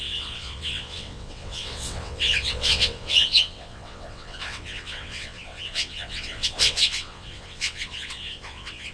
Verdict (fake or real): fake